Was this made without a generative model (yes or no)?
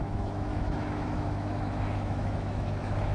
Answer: no